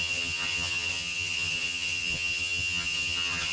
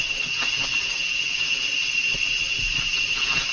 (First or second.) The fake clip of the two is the first